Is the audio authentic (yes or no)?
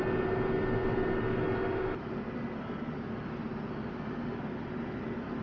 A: yes